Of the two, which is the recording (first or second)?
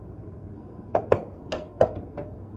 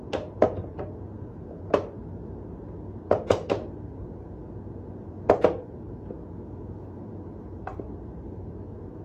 second